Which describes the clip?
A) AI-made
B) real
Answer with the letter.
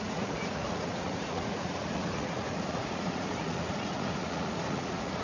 A